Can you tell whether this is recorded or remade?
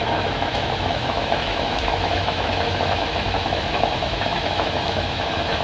remade